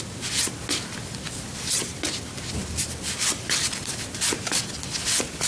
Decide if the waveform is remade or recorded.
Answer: recorded